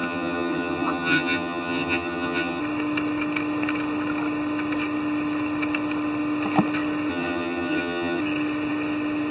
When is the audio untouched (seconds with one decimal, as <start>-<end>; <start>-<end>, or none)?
2.6-7.1; 8.2-9.3